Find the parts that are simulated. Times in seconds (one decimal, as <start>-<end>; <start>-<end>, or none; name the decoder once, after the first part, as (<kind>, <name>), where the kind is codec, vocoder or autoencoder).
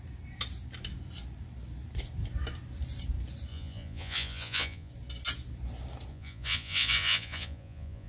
3.5-4.9 (vocoder, Vocos); 6.1-8.1